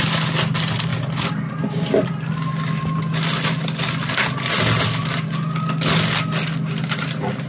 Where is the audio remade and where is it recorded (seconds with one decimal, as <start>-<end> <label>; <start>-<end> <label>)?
0.0-7.5 recorded